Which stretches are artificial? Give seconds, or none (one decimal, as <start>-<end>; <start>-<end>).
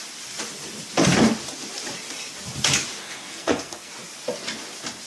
3.0-3.9